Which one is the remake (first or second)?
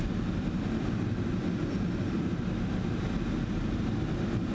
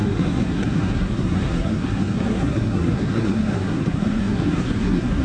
second